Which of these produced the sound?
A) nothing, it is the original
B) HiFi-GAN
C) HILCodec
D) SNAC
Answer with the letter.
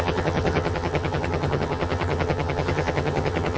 B